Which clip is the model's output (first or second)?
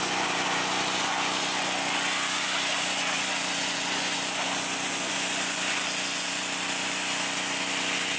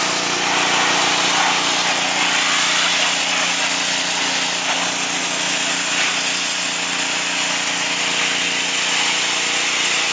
first